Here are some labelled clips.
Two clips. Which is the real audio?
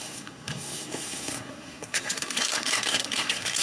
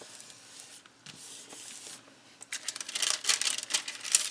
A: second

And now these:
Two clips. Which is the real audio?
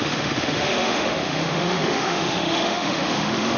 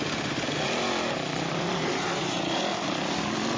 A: second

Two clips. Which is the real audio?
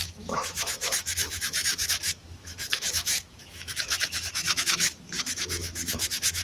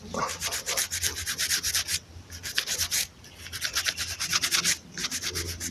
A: second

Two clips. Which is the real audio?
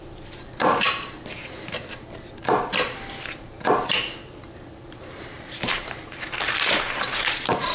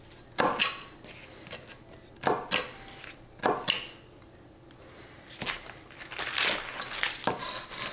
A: second